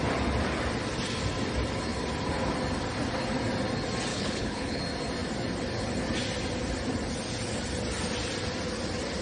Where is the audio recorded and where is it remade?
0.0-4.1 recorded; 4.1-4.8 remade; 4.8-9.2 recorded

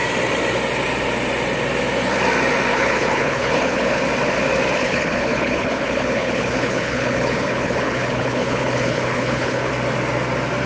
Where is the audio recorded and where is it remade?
0.0-2.7 recorded; 2.7-4.0 remade; 4.0-4.8 recorded; 4.8-9.7 remade; 9.7-10.7 recorded